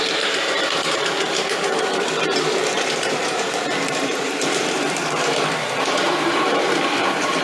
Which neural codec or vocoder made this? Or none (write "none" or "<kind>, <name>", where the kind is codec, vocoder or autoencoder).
vocoder, BigVGAN v2